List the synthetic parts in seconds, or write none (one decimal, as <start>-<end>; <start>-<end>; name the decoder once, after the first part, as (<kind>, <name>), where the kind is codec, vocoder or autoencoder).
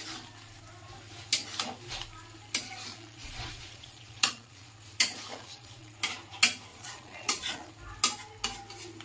2.9-4.7 (vocoder, Vocos); 5.3-6.0; 6.7-7.7